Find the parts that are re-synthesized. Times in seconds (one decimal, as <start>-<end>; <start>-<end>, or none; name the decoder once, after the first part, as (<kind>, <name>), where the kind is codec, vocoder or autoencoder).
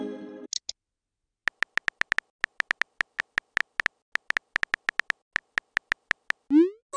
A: none